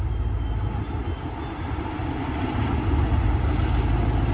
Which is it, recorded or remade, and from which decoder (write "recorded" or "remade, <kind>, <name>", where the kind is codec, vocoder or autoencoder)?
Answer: recorded